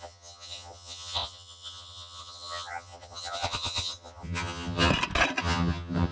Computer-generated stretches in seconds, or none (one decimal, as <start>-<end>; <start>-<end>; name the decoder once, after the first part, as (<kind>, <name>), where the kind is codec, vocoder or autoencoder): 0.0-4.9 (vocoder, HiFi-GAN); 5.4-6.1